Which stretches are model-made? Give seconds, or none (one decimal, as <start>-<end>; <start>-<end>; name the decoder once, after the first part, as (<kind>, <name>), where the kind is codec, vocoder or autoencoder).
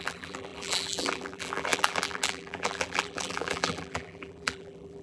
0.0-5.0 (vocoder, BigVGAN v2)